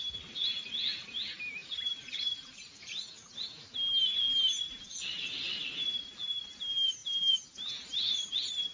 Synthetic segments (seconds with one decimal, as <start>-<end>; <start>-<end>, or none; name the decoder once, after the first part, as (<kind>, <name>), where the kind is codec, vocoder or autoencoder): 1.6-2.2 (vocoder, BigVGAN v2)